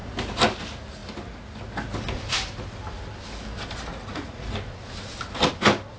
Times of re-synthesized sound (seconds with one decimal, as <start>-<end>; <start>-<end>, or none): 3.9-4.5